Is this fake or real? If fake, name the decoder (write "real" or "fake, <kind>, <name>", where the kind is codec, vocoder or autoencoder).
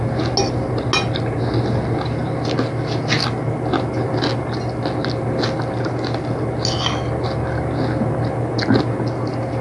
real